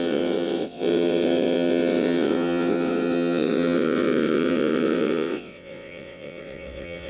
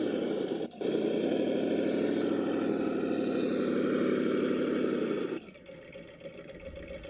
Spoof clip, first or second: first